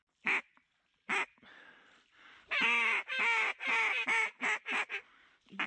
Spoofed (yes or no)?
no